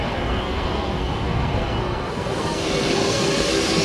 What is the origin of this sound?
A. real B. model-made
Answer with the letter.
B